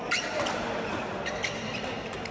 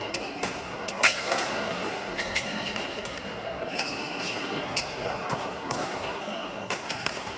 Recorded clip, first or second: first